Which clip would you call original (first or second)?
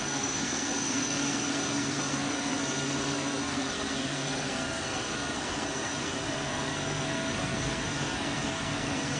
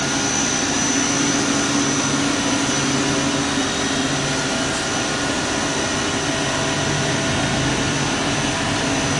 second